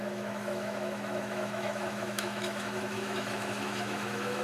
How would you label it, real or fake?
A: fake